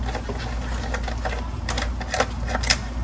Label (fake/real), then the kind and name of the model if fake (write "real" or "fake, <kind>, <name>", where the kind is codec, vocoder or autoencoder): real